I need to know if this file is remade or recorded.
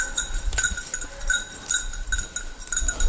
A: recorded